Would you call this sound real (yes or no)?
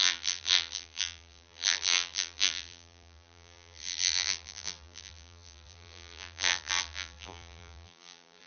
no